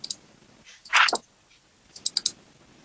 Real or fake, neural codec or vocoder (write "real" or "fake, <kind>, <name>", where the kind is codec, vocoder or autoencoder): real